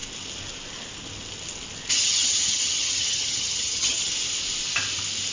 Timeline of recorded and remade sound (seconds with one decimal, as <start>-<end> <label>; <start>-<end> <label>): 0.0-1.9 recorded; 1.9-4.1 remade; 4.1-5.3 recorded